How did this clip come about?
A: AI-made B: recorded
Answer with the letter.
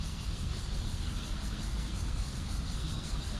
A